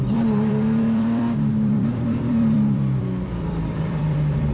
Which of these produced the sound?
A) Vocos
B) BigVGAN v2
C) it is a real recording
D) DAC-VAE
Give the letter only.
B